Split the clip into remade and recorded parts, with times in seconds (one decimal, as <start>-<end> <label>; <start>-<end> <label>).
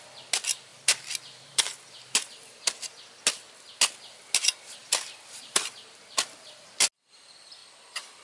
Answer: 0.0-0.7 recorded; 0.7-2.6 remade; 2.6-4.8 recorded; 4.8-6.7 remade; 6.7-8.2 recorded